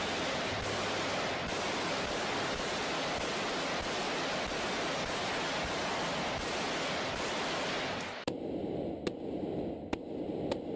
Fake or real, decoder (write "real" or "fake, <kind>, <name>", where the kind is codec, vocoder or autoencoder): real